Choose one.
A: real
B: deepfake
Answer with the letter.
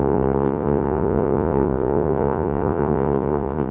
B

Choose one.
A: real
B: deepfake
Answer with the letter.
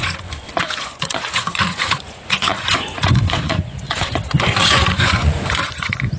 B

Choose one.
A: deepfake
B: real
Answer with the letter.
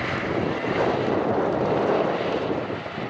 B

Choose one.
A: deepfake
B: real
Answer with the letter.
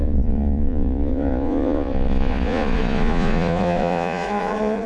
A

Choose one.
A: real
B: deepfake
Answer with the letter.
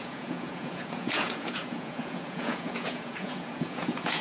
B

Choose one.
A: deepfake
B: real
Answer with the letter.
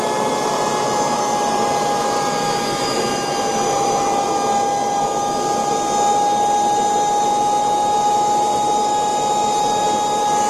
B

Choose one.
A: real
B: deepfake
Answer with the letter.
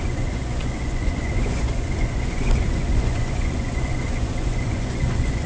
B